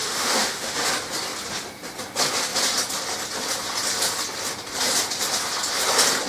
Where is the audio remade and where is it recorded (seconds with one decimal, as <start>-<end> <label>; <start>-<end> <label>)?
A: 0.0-0.9 remade; 0.9-6.3 recorded